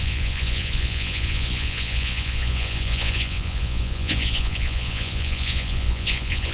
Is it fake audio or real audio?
fake